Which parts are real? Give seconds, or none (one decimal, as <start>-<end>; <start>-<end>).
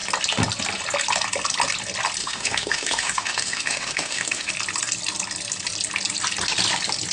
0.0-2.2; 4.5-7.1